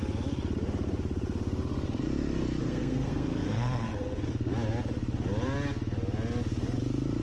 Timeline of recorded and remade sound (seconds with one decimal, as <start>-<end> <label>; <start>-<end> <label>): 0.0-2.6 recorded; 2.6-4.2 remade; 4.2-7.2 recorded